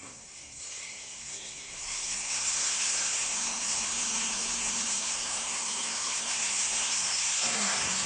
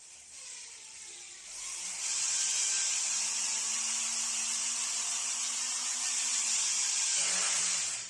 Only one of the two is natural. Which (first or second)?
second